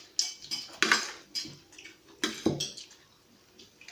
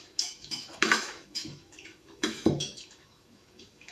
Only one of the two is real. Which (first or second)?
first